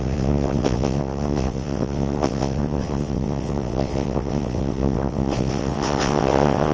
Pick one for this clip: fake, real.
fake